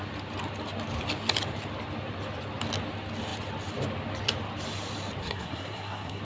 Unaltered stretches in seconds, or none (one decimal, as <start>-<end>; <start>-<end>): 0.0-5.2